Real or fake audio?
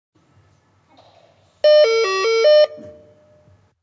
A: real